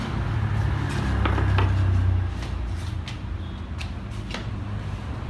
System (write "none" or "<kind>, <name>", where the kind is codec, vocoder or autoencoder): none